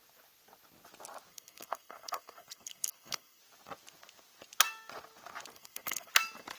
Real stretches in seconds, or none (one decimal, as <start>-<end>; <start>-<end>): 0.0-1.3; 3.4-5.5; 6.1-6.6

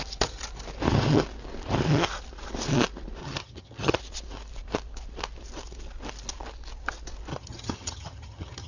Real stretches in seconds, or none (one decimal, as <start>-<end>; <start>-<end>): 0.0-3.2; 4.0-7.3